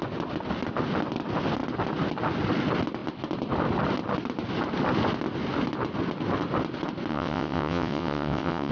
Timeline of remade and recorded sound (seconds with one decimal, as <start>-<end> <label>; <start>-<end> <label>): 0.0-7.1 recorded; 7.1-8.7 remade